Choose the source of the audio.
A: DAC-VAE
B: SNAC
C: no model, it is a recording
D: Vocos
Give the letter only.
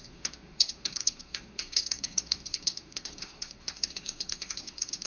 B